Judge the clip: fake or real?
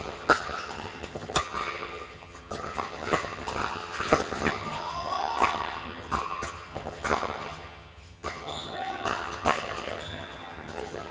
fake